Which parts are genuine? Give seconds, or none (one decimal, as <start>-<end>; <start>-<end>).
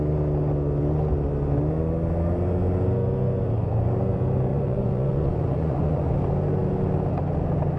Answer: 0.0-4.5; 6.1-7.8